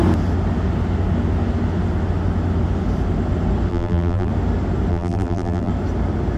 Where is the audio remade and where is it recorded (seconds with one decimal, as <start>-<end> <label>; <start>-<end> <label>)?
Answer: 0.0-3.7 recorded; 3.7-4.3 remade; 4.3-4.9 recorded; 4.9-5.7 remade; 5.7-6.4 recorded